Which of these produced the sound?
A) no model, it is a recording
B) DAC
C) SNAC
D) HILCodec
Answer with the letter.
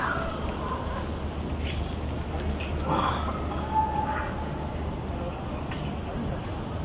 A